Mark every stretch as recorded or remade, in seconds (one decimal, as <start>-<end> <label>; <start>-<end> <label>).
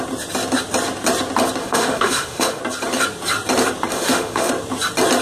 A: 0.0-1.6 recorded; 1.6-2.6 remade; 2.6-3.9 recorded; 3.9-4.5 remade; 4.5-5.2 recorded